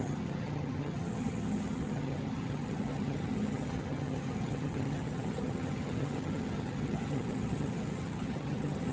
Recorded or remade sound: remade